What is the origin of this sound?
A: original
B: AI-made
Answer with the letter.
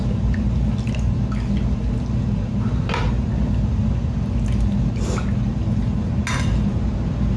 A